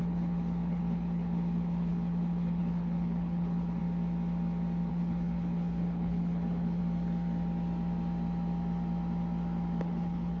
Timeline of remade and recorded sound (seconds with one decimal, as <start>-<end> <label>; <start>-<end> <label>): 0.0-3.8 remade; 3.8-4.9 recorded; 4.9-6.8 remade; 6.8-9.8 recorded; 9.8-10.4 remade